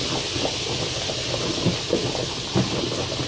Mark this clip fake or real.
real